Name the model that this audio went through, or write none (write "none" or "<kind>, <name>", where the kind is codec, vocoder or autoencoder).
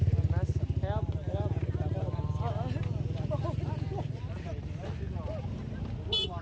none